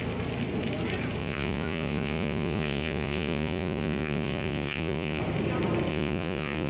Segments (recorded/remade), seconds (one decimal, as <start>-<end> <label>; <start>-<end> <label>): 0.0-1.2 recorded; 1.2-5.2 remade; 5.2-5.9 recorded; 5.9-6.7 remade